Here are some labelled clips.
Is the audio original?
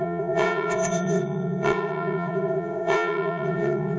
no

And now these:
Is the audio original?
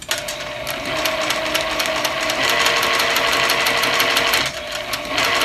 yes